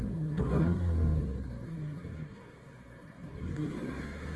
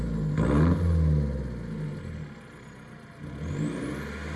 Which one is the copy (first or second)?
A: first